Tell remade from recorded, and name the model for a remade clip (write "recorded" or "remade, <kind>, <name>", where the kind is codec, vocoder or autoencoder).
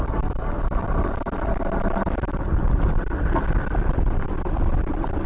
recorded